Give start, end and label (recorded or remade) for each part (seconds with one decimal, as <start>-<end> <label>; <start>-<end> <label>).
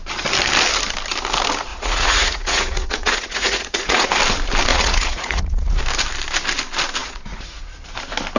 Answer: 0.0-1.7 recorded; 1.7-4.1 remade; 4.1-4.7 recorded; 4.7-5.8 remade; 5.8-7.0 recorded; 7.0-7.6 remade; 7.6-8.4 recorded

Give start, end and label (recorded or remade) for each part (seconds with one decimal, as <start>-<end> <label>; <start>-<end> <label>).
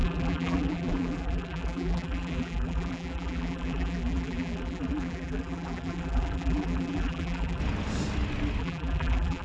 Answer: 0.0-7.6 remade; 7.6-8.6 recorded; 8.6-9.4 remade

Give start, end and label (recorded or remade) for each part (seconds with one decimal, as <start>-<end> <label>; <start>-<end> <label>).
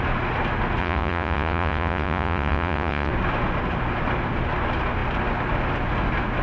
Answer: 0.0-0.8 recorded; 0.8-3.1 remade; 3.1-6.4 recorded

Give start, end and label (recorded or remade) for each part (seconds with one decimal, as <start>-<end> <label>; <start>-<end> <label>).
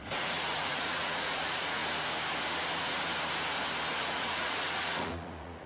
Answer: 0.0-1.8 remade; 1.8-4.0 recorded; 4.0-5.7 remade